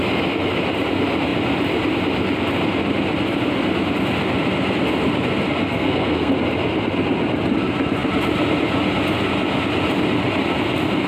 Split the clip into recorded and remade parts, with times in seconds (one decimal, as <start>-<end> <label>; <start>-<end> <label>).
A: 0.0-5.6 recorded; 5.6-6.3 remade; 6.3-11.1 recorded